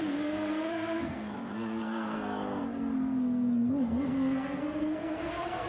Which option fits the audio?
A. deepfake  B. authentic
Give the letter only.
A